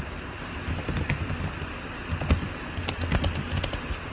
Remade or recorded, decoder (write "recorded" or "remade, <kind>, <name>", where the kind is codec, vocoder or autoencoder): recorded